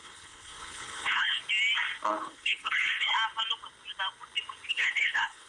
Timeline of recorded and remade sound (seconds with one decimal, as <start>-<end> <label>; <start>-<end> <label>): 0.0-1.4 remade; 1.4-2.2 recorded; 2.2-3.1 remade; 3.1-4.7 recorded; 4.7-5.5 remade

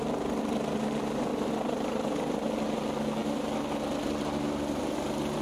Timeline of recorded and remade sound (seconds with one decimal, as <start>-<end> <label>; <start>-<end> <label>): 0.0-5.4 recorded

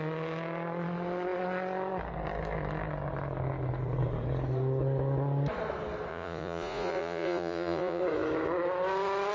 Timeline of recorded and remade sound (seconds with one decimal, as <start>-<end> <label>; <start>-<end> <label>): 0.0-6.1 recorded; 6.1-8.0 remade; 8.0-9.3 recorded

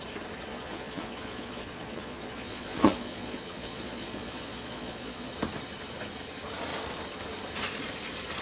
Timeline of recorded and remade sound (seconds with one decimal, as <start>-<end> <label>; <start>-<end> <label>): 0.0-0.5 recorded; 0.5-5.3 remade; 5.3-8.4 recorded